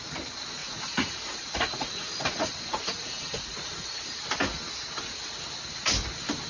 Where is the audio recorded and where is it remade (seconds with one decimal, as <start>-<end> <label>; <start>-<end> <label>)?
0.0-0.6 recorded; 0.6-4.2 remade; 4.2-6.5 recorded